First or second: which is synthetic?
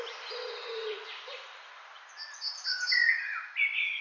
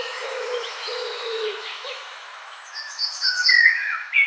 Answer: second